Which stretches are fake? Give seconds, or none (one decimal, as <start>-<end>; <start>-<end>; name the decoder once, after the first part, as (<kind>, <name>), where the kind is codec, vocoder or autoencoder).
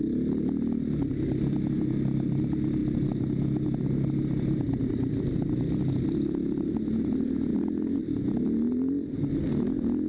none